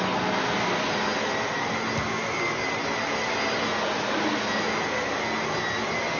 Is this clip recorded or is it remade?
recorded